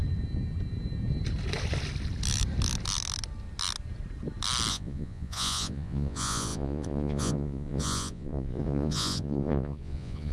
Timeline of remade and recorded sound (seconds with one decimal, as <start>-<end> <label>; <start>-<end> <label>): 0.0-4.7 recorded; 4.7-10.3 remade